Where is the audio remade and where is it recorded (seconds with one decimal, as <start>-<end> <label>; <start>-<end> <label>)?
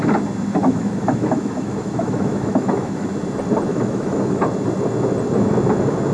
0.0-0.6 recorded; 0.6-3.1 remade; 3.1-3.7 recorded; 3.7-4.4 remade; 4.4-6.1 recorded